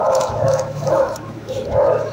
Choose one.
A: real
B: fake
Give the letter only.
B